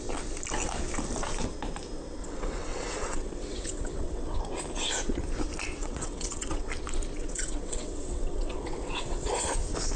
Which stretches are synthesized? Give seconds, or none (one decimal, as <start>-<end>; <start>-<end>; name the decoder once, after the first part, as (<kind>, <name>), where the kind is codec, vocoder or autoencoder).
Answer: 2.2-4.4 (vocoder, WaveNeXt); 5.8-6.7; 7.2-9.3